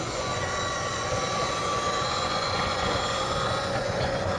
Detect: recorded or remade remade